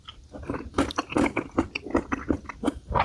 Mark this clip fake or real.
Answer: real